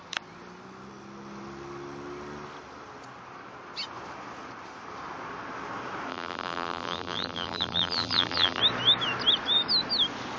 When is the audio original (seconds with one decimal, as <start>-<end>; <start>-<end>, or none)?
0.0-6.1; 8.6-10.4